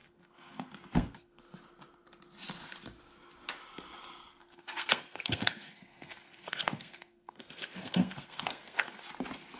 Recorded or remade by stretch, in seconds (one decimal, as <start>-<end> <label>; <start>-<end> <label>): 0.0-1.4 remade; 1.4-4.3 recorded; 4.3-9.0 remade; 9.0-9.6 recorded